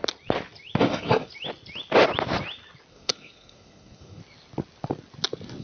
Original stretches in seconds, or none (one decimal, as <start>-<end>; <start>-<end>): 0.0-0.8; 1.3-2.9; 4.2-5.6